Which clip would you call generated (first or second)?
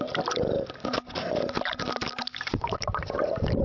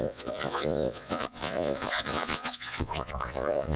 second